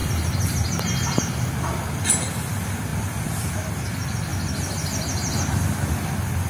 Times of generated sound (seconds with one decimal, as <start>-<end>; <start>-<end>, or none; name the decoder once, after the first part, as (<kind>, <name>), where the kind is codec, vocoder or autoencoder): 2.9-3.5 (vocoder, BigVGAN v2)